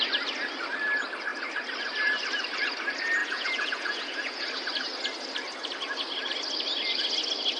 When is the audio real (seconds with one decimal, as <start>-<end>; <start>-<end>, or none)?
0.0-3.2; 4.5-7.6